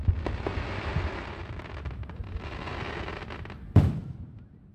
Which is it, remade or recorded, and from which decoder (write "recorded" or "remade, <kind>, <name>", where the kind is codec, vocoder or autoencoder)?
recorded